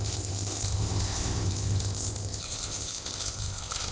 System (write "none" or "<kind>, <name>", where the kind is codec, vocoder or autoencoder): codec, ZipCodec